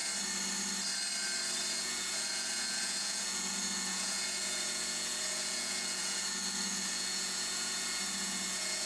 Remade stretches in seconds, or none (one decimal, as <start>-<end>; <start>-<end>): 1.7-8.9